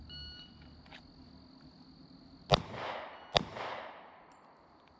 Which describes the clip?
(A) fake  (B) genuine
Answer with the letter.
B